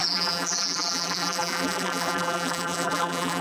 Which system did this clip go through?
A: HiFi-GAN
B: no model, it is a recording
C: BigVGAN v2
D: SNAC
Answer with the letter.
C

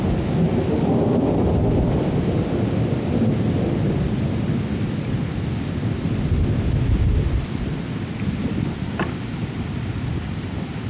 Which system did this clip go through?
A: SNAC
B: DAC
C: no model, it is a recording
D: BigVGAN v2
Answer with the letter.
C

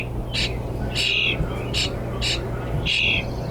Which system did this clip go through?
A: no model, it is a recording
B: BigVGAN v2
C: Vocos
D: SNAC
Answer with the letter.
A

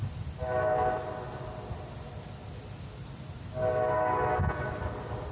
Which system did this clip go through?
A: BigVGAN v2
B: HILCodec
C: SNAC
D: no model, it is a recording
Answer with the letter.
D